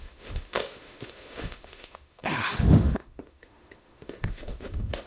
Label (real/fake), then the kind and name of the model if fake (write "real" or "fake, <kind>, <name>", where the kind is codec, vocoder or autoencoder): fake, autoencoder, DAC-VAE